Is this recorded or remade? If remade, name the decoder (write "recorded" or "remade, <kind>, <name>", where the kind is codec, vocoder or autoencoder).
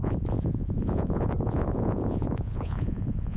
remade, vocoder, Vocos